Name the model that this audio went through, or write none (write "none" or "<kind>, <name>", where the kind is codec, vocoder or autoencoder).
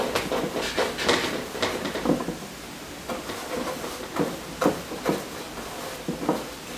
none